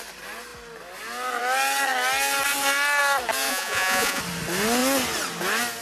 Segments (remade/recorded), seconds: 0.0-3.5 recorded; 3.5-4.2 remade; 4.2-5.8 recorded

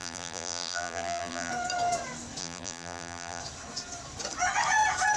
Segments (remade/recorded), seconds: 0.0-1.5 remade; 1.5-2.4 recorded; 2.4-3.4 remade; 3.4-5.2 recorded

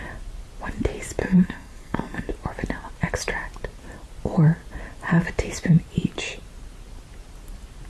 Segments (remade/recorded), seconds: 0.0-1.2 recorded; 1.2-2.3 remade; 2.3-7.9 recorded

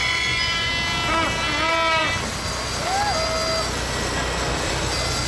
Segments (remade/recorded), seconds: 0.0-0.7 remade; 0.7-5.3 recorded